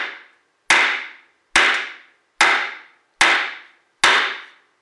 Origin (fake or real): real